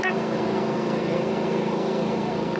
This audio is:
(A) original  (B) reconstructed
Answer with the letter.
B